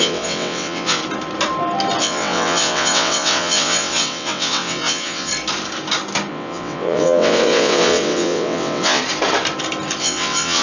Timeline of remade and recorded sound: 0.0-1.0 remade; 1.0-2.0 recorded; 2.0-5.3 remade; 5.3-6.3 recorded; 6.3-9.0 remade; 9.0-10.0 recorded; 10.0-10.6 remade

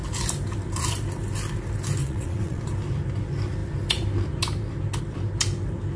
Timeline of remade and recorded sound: 0.0-2.0 recorded; 2.0-2.6 remade; 2.6-6.0 recorded